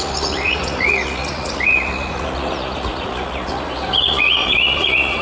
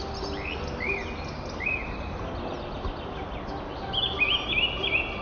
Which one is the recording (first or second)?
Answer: second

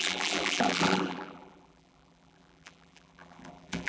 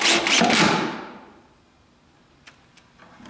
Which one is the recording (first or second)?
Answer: second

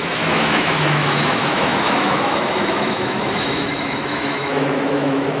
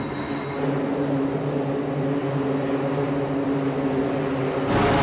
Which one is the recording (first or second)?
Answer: second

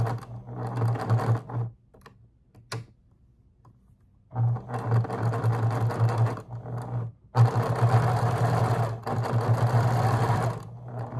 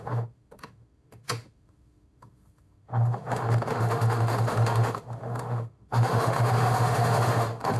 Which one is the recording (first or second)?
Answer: first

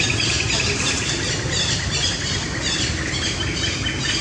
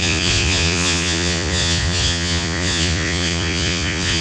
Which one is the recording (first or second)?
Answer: first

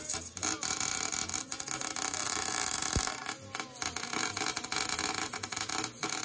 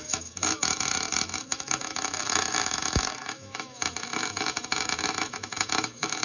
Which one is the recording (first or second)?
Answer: first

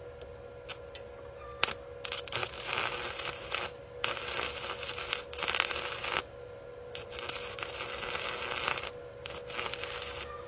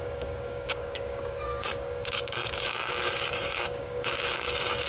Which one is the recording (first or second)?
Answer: first